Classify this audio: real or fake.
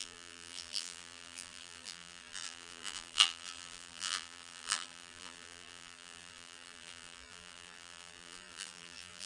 fake